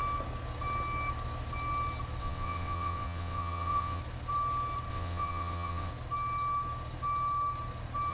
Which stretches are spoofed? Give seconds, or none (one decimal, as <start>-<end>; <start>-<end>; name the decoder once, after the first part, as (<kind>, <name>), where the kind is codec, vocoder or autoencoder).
2.2-4.0 (vocoder, WaveNeXt); 4.9-5.9